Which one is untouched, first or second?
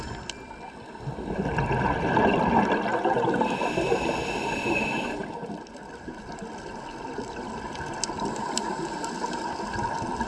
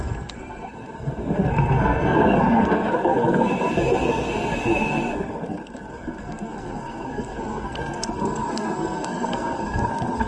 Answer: first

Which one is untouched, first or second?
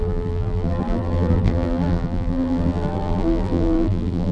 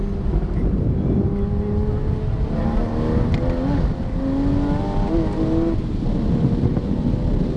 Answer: second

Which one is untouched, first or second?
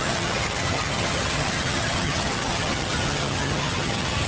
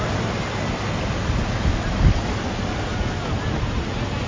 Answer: second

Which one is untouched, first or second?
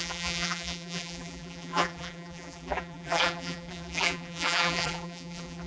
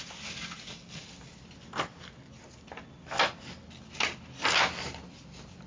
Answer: second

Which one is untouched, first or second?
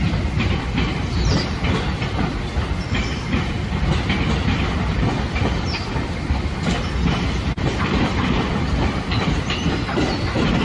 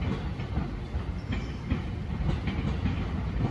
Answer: second